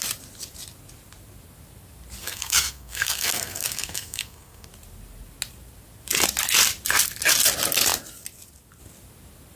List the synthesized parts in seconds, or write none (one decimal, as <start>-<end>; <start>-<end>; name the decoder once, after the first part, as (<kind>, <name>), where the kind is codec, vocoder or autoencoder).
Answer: 2.2-4.7 (codec, SNAC)